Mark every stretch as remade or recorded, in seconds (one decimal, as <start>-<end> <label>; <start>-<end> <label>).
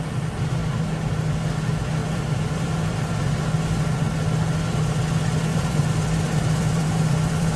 0.0-2.0 recorded; 2.0-3.3 remade; 3.3-5.5 recorded; 5.5-7.6 remade